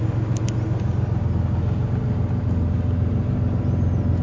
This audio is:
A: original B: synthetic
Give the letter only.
A